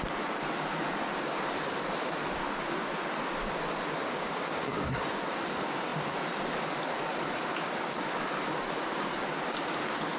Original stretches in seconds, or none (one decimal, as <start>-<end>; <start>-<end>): 0.0-4.0; 5.0-10.2